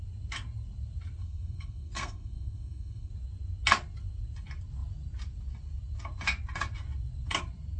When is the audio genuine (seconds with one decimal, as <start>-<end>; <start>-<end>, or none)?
0.0-1.2; 3.1-7.8